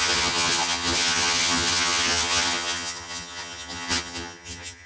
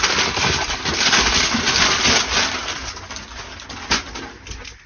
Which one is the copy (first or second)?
first